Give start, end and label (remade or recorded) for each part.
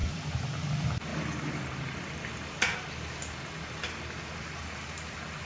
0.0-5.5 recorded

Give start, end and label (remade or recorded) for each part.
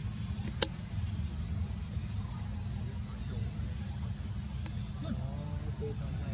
0.0-6.3 recorded